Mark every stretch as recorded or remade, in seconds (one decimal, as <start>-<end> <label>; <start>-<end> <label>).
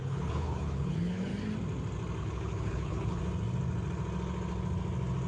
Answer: 0.0-1.3 remade; 1.3-2.2 recorded; 2.2-3.2 remade; 3.2-5.3 recorded